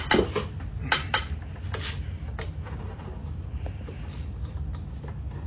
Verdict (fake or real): real